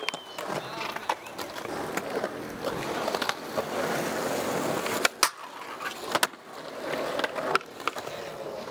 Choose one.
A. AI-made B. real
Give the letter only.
B